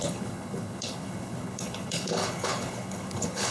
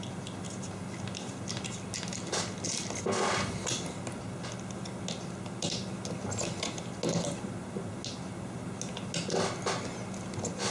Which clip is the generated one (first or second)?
first